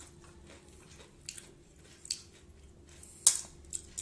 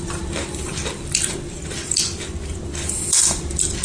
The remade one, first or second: second